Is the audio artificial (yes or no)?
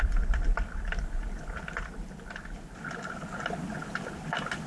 no